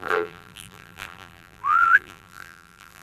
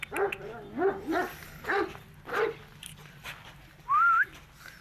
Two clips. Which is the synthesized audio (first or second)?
first